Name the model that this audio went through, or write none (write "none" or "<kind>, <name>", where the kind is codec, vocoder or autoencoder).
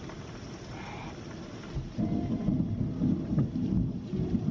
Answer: none